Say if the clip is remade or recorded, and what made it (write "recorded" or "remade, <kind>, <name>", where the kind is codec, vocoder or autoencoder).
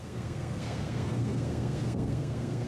remade, codec, SNAC